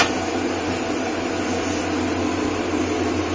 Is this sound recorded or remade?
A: recorded